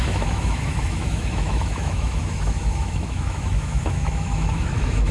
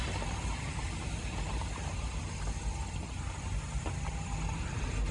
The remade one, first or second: first